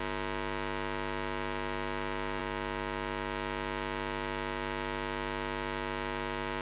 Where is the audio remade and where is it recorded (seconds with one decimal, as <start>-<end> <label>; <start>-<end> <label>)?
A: 0.0-6.6 recorded